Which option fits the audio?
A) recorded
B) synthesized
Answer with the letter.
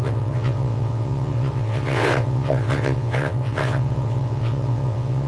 B